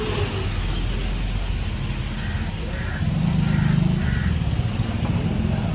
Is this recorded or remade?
recorded